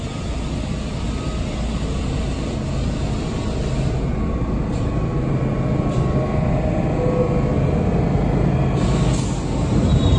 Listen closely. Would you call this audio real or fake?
real